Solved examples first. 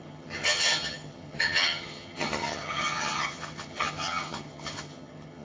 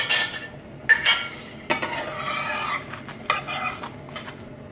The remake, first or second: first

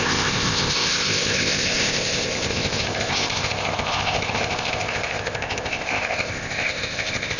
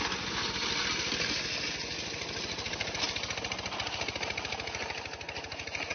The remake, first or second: first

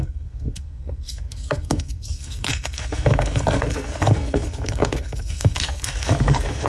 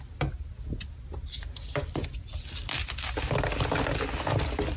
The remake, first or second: first